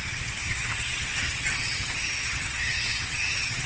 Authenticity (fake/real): fake